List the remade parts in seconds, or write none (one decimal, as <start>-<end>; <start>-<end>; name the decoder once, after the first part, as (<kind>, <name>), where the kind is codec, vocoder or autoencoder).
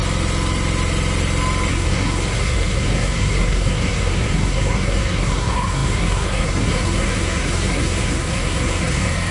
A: 1.7-9.3 (codec, SNAC)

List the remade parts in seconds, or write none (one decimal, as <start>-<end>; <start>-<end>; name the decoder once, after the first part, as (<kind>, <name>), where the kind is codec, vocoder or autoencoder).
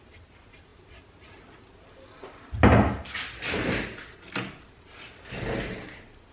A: none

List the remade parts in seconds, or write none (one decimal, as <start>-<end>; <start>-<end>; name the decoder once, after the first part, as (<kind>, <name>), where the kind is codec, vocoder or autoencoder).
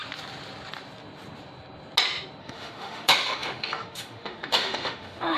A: 2.4-5.4 (autoencoder, DAC-VAE)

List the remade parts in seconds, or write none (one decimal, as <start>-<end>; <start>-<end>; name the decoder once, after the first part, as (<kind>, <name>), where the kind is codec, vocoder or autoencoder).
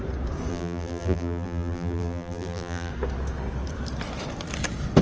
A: 0.5-2.9 (vocoder, BigVGAN v2)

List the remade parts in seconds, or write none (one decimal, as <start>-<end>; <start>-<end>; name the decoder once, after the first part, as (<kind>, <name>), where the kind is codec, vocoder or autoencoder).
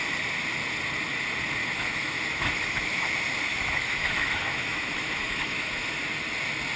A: 1.6-3.1 (autoencoder, DAC-VAE); 3.5-6.0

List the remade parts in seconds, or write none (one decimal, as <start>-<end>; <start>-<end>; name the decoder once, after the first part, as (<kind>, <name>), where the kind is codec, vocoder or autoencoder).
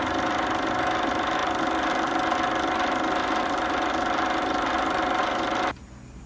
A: none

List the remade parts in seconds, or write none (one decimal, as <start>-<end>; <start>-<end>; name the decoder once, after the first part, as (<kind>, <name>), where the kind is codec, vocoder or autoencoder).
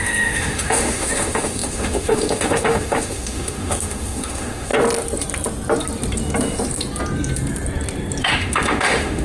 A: 0.0-4.7 (autoencoder, DAC-VAE); 8.2-9.2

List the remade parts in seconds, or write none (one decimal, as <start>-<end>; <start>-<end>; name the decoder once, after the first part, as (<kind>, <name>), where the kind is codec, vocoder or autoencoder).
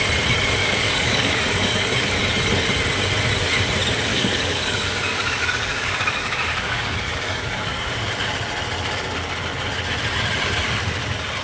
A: 0.6-2.2 (codec, DAC); 4.1-7.9